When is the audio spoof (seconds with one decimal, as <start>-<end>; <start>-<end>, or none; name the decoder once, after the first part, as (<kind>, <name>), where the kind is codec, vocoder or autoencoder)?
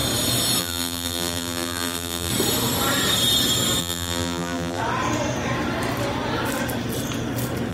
0.6-2.3 (vocoder, BigVGAN v2); 3.8-4.8